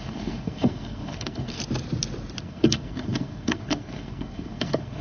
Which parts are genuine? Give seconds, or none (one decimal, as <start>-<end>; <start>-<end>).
1.6-2.4